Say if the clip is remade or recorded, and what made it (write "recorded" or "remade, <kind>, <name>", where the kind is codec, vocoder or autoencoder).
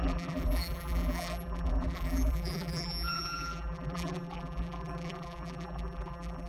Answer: remade, vocoder, BigVGAN v2